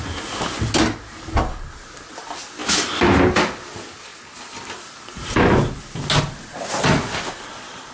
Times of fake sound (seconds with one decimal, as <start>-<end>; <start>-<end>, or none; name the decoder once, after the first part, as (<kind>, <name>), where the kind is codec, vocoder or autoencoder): none